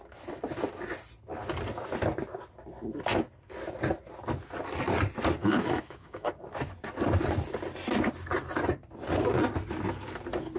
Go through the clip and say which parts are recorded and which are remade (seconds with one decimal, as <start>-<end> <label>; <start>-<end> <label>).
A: 0.0-5.4 recorded; 5.4-6.3 remade; 6.3-10.6 recorded